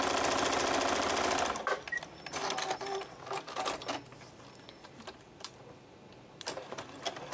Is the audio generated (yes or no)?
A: no